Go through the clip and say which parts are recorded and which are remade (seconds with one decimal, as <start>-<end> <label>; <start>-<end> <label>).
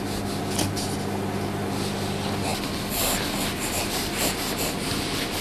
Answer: 0.0-5.4 recorded